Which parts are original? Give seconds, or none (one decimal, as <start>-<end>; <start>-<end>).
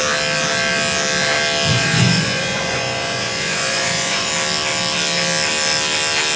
0.0-1.7; 4.3-6.4